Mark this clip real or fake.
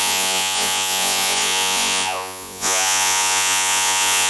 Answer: fake